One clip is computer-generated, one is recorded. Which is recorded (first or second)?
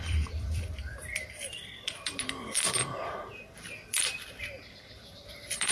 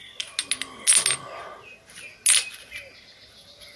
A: second